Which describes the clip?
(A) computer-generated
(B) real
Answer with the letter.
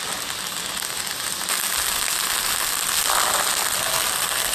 B